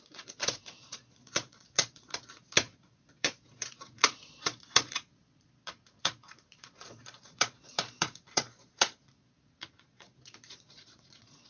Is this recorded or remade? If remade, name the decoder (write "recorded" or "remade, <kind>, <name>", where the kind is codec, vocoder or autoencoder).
remade, vocoder, Vocos